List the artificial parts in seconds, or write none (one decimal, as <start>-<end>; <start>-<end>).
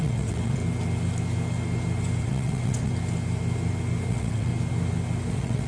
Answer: 0.0-0.6; 2.2-2.9; 4.1-4.5; 5.3-5.7